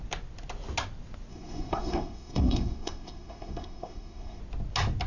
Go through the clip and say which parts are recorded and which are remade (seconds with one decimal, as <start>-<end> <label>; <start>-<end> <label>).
0.0-1.3 recorded; 1.3-4.4 remade; 4.4-5.1 recorded